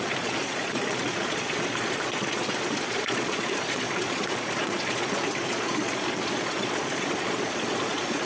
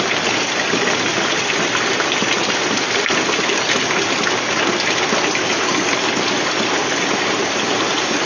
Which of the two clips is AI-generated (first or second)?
first